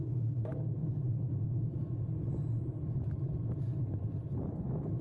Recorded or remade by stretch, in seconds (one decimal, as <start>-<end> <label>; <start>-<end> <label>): 0.0-0.8 recorded; 0.8-1.3 remade; 1.3-5.0 recorded